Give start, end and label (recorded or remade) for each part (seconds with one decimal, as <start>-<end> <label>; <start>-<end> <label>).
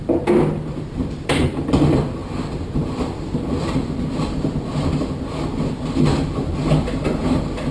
0.0-7.7 recorded